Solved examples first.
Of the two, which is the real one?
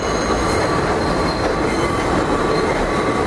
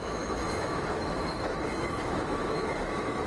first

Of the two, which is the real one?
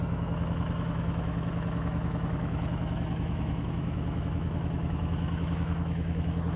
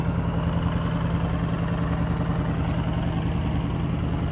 second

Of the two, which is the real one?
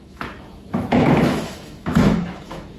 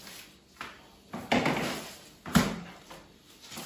second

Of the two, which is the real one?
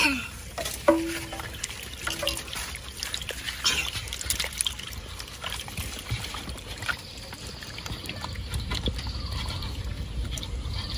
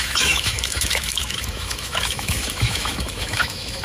first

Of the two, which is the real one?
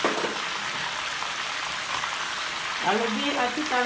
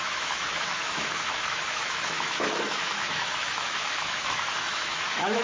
first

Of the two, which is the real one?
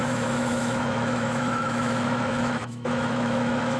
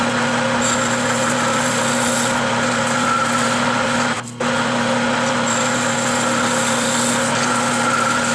second